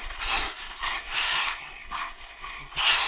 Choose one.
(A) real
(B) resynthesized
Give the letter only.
B